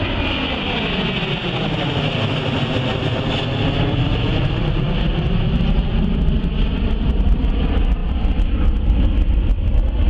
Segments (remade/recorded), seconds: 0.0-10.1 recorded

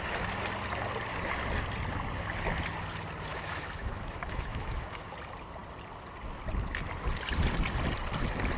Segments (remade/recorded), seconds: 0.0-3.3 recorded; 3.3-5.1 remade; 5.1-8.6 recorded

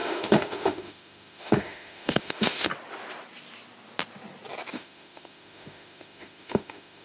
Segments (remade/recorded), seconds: 0.0-2.7 remade; 2.7-4.7 recorded; 4.7-7.0 remade